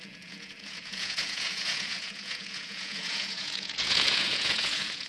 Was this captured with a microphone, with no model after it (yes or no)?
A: no